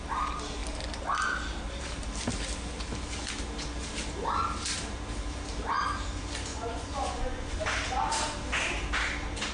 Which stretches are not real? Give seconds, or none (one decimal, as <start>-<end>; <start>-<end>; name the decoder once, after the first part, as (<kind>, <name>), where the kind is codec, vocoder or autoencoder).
6.5-7.6 (vocoder, Vocos)